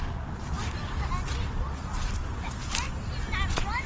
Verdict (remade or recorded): recorded